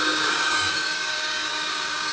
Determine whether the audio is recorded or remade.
remade